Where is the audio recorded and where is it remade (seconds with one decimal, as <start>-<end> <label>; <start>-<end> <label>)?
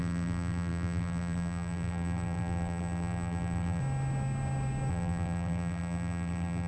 0.0-3.8 remade; 3.8-4.9 recorded; 4.9-6.7 remade